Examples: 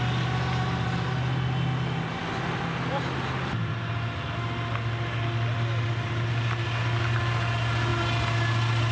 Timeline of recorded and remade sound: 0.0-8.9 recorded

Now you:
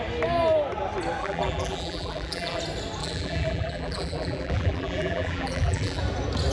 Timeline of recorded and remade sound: 0.0-1.2 recorded; 1.2-2.6 remade; 2.6-3.0 recorded; 3.0-6.0 remade; 6.0-6.5 recorded